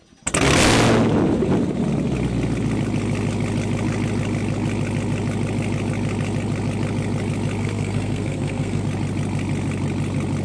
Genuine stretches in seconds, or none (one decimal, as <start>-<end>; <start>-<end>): 0.0-7.6; 8.8-10.4